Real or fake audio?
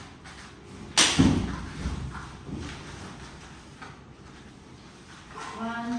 real